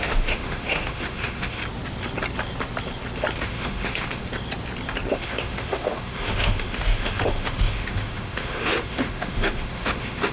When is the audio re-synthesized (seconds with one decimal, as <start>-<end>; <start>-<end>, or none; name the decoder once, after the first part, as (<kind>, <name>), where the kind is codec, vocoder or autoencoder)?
0.0-1.6 (autoencoder, DAC-VAE); 3.4-4.2; 5.1-10.3